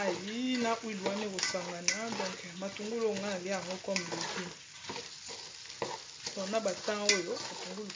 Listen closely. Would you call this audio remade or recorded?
recorded